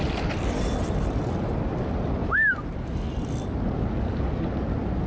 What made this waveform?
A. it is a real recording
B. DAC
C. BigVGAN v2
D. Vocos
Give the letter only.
A